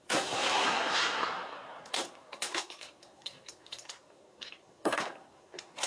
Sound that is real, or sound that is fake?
fake